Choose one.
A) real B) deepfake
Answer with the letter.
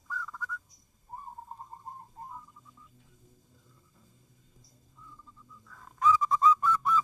B